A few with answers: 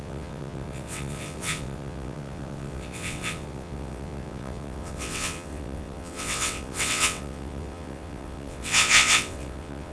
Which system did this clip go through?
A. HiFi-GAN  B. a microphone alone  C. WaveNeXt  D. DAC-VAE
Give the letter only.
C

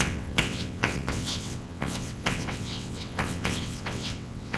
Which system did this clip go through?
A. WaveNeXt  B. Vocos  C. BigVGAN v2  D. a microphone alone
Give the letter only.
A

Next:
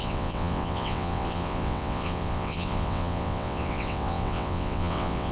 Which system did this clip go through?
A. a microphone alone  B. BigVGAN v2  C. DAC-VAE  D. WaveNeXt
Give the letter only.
D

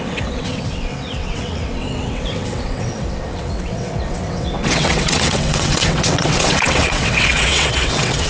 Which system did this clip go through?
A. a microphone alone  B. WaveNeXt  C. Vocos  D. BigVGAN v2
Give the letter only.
B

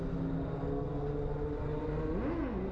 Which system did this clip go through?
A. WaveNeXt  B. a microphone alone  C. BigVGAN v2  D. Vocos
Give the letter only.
B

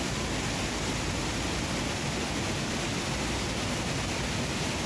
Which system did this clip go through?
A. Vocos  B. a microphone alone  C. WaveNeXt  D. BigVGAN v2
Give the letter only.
B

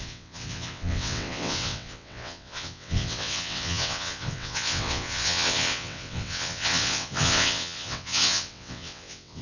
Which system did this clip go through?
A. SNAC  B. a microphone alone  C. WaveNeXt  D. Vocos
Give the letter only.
C